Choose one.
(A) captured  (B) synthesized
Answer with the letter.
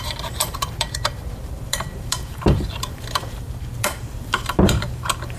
B